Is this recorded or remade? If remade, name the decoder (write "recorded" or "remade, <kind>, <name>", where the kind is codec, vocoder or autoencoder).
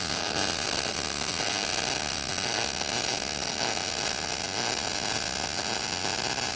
recorded